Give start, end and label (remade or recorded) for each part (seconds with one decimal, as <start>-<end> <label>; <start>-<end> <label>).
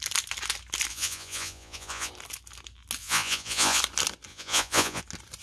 0.0-0.9 recorded; 0.9-2.1 remade; 2.1-3.0 recorded; 3.0-3.8 remade; 3.8-4.3 recorded; 4.3-5.0 remade; 5.0-5.4 recorded